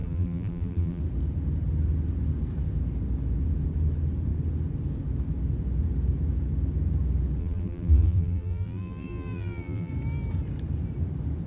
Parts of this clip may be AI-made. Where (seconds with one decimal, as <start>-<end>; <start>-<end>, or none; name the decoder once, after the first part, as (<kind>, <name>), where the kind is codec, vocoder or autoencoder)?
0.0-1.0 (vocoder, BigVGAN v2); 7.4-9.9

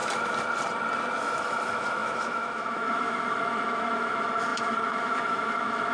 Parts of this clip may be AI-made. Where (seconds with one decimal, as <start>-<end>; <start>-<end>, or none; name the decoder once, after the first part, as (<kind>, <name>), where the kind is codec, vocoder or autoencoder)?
1.2-5.9 (autoencoder, DAC-VAE)

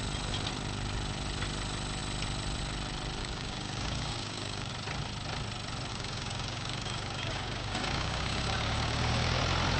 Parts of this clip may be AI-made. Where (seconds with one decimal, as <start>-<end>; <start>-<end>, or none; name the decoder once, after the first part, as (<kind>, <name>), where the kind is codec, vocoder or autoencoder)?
3.2-4.7 (codec, DAC); 5.9-9.4

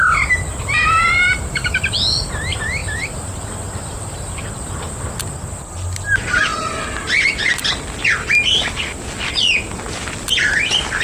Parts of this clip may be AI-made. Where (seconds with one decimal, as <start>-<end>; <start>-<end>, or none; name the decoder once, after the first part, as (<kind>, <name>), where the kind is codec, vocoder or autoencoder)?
0.5-2.3 (vocoder, BigVGAN v2); 2.8-4.4

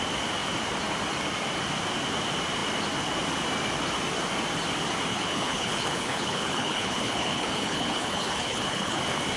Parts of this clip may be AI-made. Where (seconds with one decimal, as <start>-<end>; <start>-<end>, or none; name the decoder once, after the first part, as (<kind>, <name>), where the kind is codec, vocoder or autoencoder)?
5.1-9.0 (codec, HILCodec)

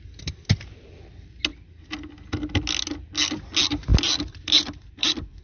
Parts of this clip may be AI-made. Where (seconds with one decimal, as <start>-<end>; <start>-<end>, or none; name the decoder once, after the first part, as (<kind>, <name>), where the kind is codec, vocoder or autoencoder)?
3.9-5.4 (vocoder, BigVGAN v2)

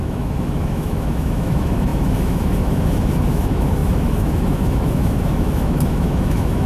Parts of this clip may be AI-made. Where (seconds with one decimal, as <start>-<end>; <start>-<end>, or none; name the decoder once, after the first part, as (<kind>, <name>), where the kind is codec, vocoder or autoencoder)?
0.0-6.7 (autoencoder, DAC-VAE)